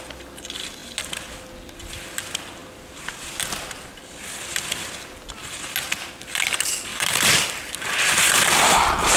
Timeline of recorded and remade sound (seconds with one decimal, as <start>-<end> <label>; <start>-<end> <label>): 0.0-6.9 recorded; 6.9-7.8 remade; 7.8-9.2 recorded